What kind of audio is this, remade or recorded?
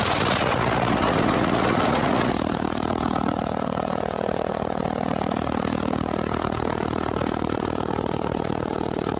remade